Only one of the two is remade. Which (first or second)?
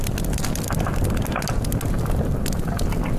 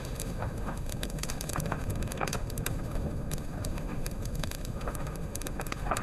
second